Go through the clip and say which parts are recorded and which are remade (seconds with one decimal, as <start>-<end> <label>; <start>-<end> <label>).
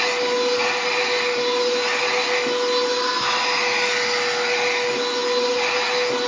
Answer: 0.0-6.3 recorded